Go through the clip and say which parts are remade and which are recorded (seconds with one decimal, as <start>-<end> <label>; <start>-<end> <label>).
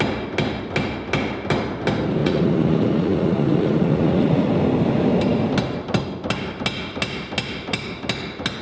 0.0-2.2 recorded; 2.2-4.5 remade; 4.5-8.6 recorded